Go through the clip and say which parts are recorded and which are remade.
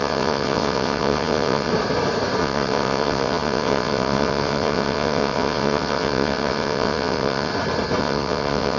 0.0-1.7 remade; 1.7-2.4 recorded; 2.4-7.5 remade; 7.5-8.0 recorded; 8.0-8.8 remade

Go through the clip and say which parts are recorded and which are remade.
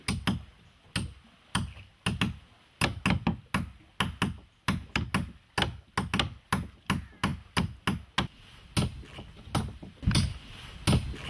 0.0-11.3 recorded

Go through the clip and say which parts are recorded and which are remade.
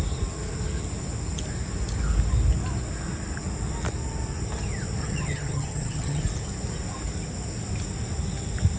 0.0-5.0 recorded; 5.0-6.2 remade; 6.2-8.8 recorded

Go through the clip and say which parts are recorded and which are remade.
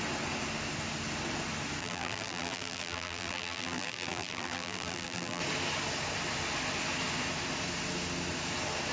0.0-1.8 recorded; 1.8-5.4 remade; 5.4-8.9 recorded